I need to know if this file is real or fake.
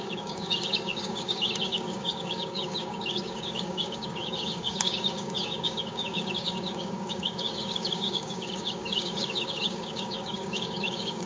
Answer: fake